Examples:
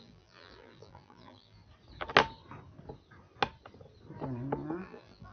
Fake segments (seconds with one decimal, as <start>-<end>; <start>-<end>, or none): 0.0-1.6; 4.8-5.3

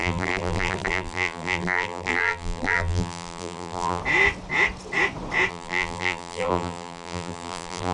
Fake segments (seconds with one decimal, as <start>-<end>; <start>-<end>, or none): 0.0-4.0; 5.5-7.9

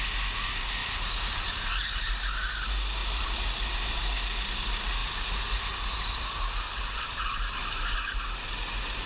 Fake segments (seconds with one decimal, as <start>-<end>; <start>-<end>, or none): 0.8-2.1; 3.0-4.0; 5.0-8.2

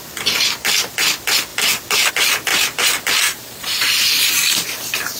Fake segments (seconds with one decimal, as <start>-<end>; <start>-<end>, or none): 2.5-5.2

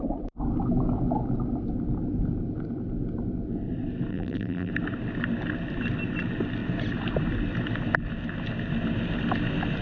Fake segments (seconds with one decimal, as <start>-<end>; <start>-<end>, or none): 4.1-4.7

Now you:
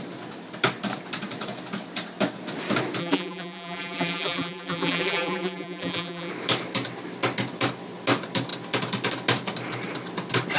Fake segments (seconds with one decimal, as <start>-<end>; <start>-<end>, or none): 3.0-6.3

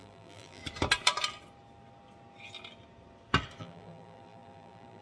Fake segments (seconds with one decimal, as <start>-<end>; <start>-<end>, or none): 0.0-0.6; 3.6-5.0